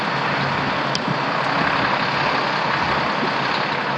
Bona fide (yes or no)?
yes